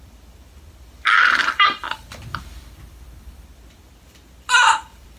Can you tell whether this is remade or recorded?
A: remade